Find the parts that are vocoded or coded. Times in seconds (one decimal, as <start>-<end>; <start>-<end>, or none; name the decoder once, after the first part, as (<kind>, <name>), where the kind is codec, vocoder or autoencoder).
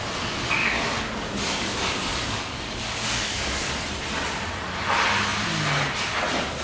0.6-3.7 (codec, DAC)